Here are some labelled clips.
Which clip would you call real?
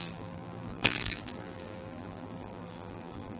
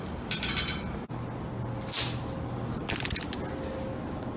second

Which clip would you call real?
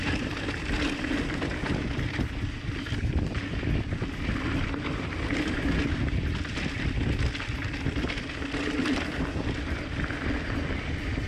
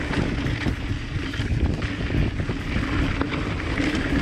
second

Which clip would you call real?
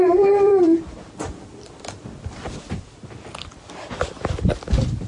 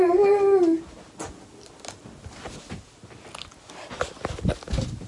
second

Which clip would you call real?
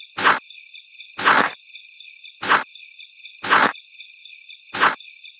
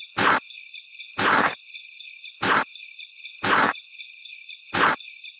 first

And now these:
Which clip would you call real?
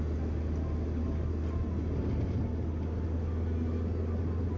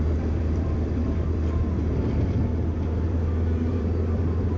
first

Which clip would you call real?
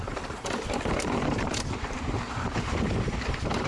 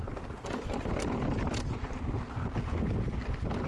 second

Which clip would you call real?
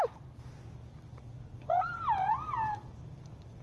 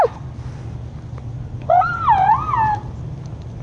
second